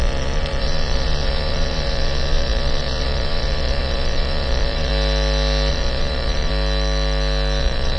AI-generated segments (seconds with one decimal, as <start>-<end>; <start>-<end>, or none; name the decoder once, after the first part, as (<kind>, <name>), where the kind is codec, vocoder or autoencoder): 0.0-4.9 (vocoder, Vocos); 5.7-6.5; 7.6-8.0